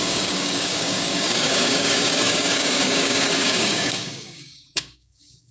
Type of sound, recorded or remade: remade